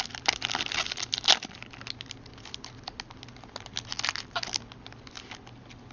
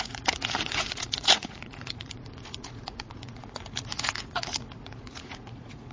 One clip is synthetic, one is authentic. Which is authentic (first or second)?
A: first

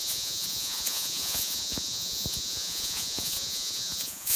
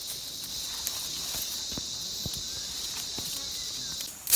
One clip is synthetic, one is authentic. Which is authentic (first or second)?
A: second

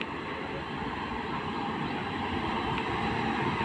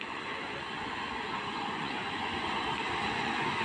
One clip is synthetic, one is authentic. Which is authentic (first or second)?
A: first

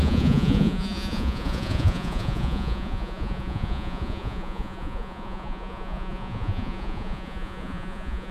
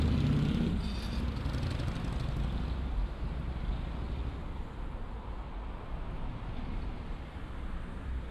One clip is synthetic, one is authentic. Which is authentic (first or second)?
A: second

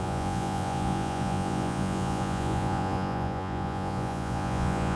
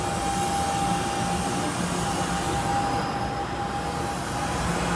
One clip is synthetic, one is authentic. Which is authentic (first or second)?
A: second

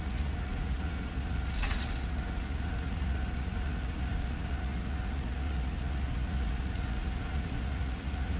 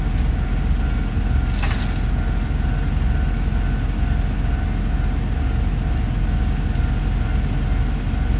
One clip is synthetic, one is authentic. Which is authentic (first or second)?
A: second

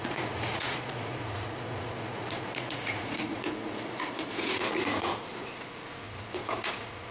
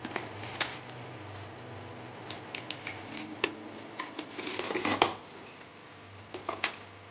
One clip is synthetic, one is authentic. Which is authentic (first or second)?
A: second